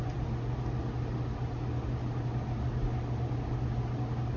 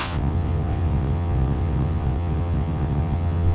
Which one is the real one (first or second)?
first